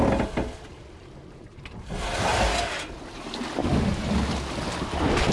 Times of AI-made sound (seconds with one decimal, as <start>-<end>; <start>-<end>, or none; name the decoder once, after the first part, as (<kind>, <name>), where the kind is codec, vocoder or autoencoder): none